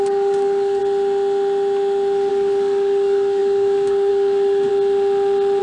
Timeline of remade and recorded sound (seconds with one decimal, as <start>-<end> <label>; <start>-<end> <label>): 0.0-0.8 remade; 0.8-2.3 recorded; 2.3-4.7 remade; 4.7-5.6 recorded